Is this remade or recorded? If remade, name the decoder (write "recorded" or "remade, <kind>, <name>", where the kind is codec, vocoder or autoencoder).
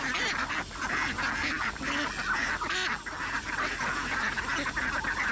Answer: recorded